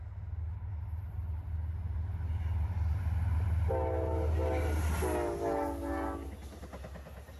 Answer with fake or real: real